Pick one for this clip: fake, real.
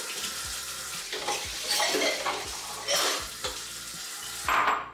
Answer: real